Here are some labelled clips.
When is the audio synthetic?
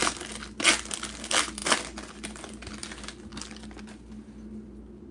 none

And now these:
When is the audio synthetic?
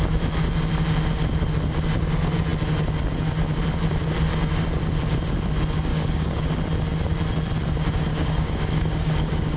5.9-6.5 (codec, DAC); 8.1-9.6